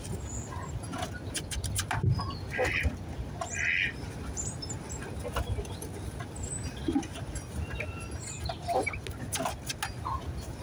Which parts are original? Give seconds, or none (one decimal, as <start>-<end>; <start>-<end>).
0.0-10.6